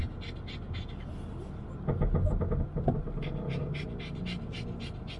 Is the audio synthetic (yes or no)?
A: no